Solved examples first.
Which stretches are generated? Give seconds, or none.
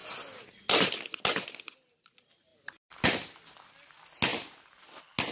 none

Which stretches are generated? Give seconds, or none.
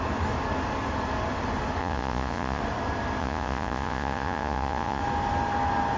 1.8-2.6 (vocoder, Vocos); 3.2-5.0